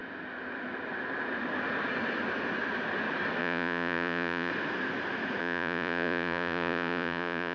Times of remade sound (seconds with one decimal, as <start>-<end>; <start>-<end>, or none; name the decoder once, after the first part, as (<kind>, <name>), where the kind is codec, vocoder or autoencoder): 3.4-4.5 (vocoder, Vocos); 5.4-7.5